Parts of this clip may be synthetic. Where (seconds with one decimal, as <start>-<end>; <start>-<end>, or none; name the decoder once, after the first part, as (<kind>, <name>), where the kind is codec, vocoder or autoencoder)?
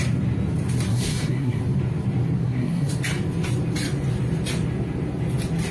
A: 0.9-1.6 (codec, SNAC); 2.4-2.9